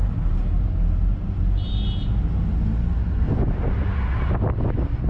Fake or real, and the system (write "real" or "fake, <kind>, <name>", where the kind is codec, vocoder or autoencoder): real